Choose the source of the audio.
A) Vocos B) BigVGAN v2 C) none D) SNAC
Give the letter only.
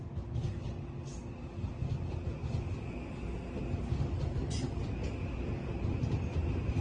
C